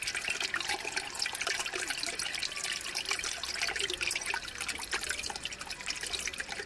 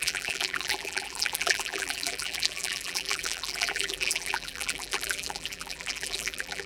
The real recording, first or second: first